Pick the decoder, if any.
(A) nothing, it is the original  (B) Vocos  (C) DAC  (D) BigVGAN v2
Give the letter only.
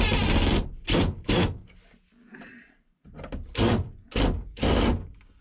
A